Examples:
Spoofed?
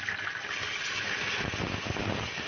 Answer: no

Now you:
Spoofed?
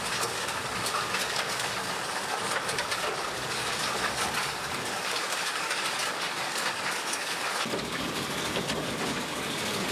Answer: yes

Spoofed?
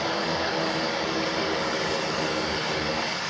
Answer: yes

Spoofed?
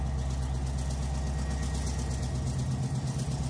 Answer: no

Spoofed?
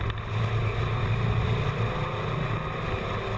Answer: no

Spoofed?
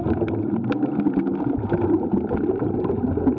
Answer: no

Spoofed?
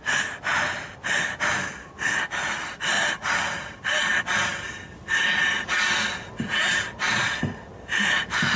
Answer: no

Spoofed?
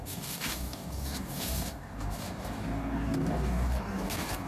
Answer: yes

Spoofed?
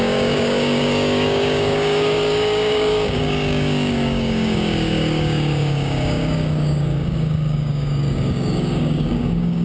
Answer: yes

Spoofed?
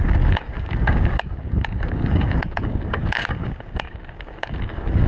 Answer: yes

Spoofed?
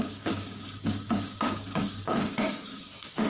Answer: yes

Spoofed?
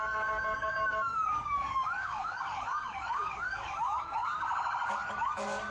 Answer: yes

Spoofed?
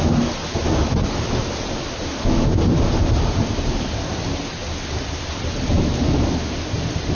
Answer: no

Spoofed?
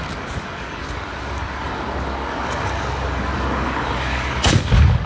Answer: yes